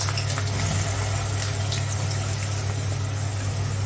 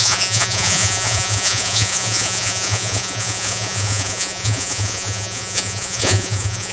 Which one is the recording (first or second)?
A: first